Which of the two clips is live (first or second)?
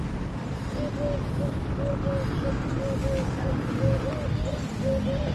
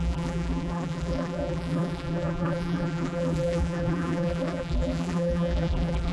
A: first